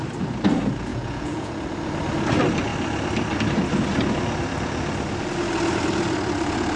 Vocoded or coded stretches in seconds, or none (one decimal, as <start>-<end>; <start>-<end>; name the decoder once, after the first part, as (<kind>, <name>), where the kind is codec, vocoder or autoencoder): 0.9-1.5 (vocoder, Vocos)